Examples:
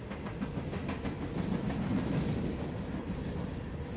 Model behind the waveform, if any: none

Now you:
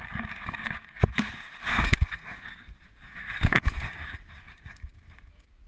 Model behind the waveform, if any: codec, DAC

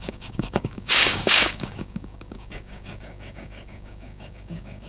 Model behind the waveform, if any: codec, DAC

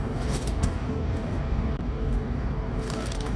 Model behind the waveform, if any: codec, DAC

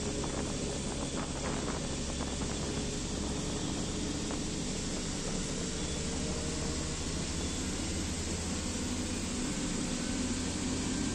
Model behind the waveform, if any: none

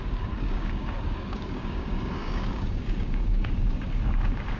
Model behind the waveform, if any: codec, DAC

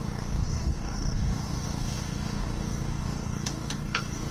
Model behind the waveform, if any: codec, DAC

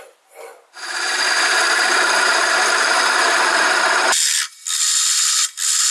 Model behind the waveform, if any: none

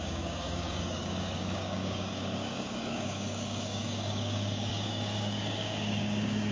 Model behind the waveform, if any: codec, DAC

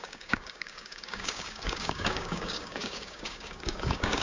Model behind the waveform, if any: codec, DAC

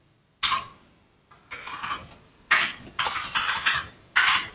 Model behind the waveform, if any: none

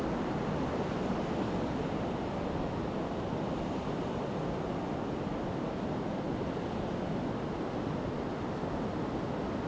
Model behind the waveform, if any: none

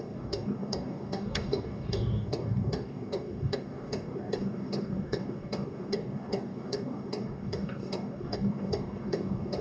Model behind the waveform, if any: codec, DAC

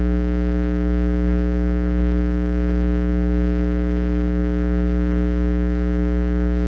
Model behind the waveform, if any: codec, DAC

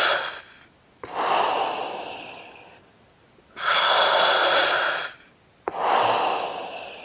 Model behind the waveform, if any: none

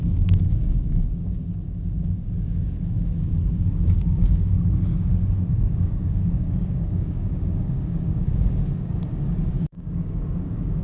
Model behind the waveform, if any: codec, DAC